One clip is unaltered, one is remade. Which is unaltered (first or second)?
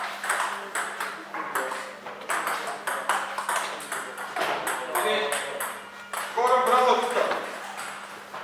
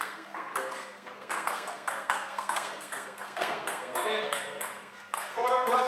first